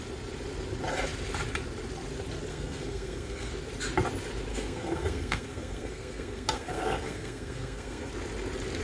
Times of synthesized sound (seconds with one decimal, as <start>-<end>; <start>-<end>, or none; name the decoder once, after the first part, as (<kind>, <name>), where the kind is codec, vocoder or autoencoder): 2.5-3.5 (codec, SNAC); 4.5-8.1